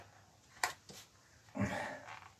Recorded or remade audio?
recorded